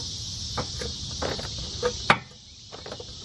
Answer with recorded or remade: recorded